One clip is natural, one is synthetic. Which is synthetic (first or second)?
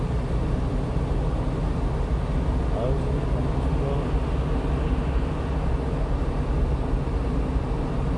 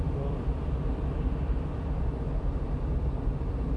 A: second